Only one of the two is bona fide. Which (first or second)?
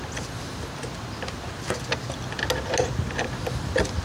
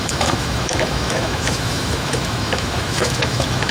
first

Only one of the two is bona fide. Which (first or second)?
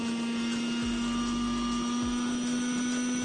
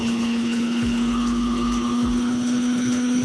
first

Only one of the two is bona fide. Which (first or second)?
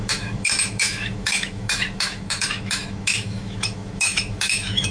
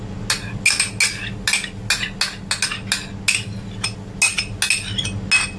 second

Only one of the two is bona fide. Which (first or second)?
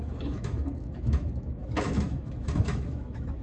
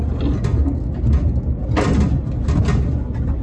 second